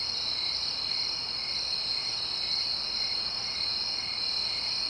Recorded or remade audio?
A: recorded